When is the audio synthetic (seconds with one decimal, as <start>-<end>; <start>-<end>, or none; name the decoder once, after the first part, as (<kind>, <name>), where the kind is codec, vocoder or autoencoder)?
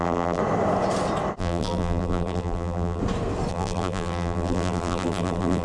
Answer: 0.0-0.4 (vocoder, BigVGAN v2); 1.4-3.0; 3.5-5.6